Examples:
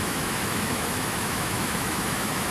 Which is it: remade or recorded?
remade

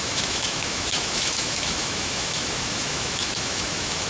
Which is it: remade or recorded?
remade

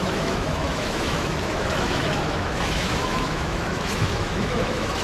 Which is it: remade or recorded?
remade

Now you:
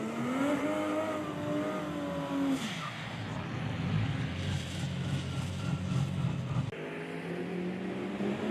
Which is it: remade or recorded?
recorded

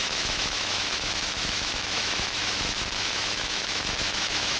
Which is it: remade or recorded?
remade